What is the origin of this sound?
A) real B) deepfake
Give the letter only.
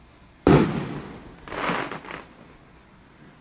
A